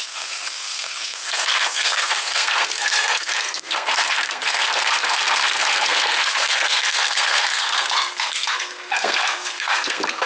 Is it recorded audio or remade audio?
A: remade